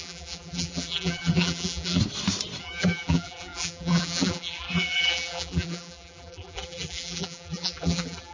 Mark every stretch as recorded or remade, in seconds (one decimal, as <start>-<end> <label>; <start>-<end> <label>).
0.0-2.0 remade; 2.0-2.6 recorded; 2.6-8.3 remade